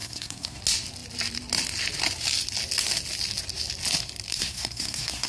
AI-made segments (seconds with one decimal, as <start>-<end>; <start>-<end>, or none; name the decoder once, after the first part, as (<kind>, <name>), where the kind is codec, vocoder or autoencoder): 0.0-0.6 (codec, SNAC); 4.3-5.3